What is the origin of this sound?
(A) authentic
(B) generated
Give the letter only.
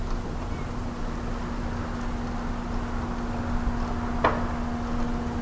A